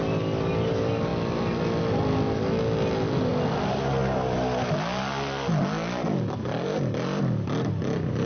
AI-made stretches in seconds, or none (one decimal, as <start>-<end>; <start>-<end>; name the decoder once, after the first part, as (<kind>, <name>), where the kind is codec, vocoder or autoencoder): none